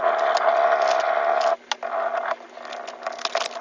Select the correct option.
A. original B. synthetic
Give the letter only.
A